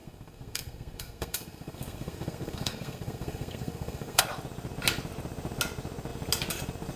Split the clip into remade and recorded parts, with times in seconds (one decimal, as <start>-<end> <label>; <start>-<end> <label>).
0.0-4.2 remade; 4.2-7.0 recorded